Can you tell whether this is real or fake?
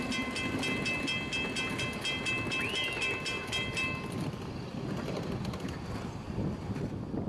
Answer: real